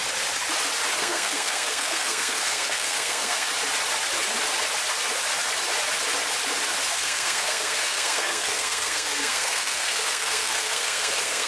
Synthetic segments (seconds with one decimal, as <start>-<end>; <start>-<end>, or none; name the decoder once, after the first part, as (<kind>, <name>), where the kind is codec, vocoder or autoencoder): 1.0-3.5 (codec, SNAC); 6.9-11.5